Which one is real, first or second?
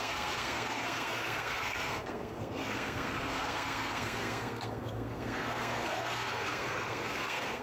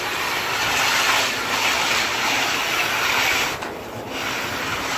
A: second